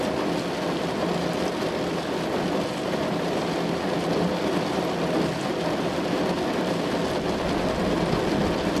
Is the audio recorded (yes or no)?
yes